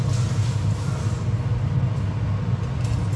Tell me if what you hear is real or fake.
real